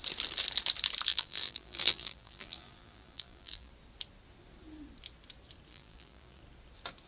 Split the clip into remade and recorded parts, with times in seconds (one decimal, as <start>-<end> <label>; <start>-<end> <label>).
0.0-1.1 recorded; 1.1-3.7 remade; 3.7-5.7 recorded; 5.7-6.4 remade; 6.4-7.1 recorded